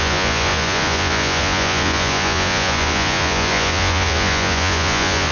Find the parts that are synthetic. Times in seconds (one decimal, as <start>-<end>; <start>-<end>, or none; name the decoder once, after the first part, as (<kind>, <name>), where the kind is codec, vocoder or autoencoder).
0.0-5.3 (vocoder, Vocos)